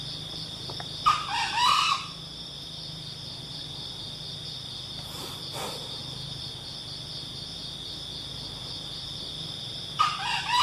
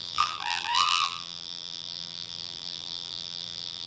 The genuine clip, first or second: first